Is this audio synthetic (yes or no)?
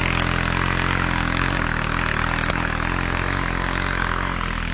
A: no